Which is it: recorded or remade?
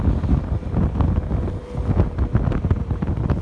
recorded